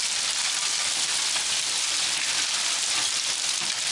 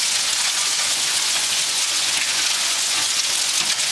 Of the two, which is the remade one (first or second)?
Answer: second